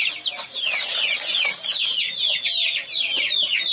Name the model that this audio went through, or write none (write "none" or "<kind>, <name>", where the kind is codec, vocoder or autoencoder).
none